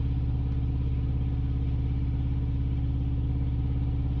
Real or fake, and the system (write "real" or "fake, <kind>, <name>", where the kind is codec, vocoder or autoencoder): real